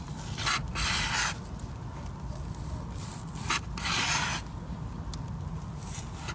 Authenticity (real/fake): real